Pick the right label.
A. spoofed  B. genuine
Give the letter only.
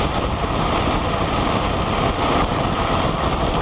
B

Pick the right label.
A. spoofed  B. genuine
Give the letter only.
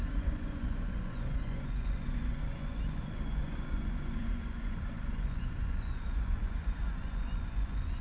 A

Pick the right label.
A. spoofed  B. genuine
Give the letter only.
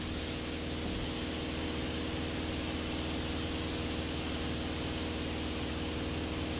B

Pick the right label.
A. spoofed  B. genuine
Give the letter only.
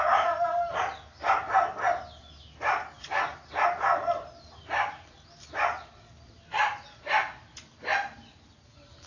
B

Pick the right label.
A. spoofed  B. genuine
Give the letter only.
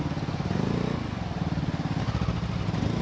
B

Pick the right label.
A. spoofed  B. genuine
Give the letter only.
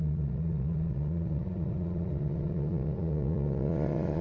A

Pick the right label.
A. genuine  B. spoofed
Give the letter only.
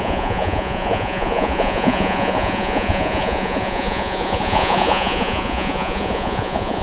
B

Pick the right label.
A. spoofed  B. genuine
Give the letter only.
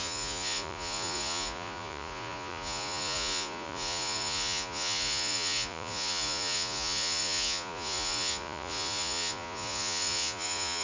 A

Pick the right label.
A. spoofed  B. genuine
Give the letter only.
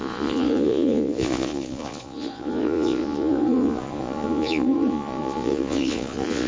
A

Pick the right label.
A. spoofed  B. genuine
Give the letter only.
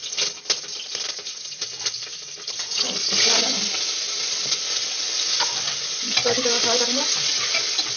B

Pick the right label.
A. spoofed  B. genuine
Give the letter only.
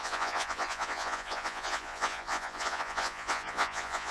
A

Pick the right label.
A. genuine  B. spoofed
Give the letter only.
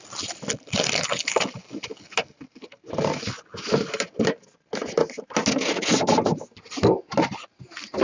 A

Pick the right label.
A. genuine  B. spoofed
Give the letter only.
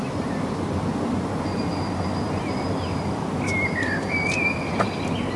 A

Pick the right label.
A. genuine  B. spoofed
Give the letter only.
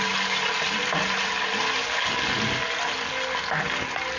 A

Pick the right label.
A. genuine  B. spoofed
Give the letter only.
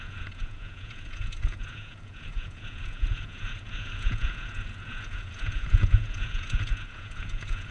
B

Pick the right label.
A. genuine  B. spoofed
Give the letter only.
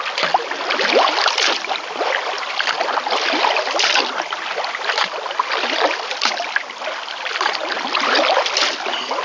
A